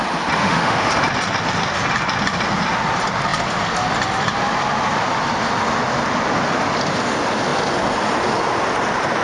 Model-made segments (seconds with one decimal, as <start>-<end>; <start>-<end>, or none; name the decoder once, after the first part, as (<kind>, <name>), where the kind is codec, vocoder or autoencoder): 0.4-0.9 (autoencoder, DAC-VAE)